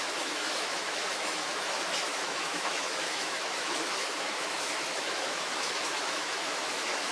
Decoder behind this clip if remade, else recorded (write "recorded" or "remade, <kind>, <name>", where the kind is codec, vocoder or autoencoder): remade, autoencoder, DAC-VAE